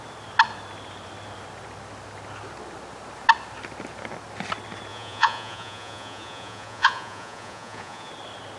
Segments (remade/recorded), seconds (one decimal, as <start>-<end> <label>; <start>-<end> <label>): 0.0-4.9 recorded; 4.9-8.1 remade; 8.1-8.6 recorded